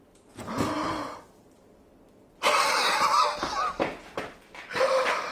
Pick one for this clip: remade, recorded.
recorded